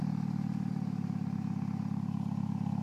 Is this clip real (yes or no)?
yes